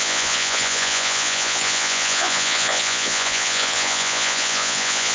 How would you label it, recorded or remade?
remade